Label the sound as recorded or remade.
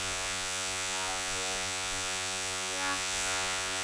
remade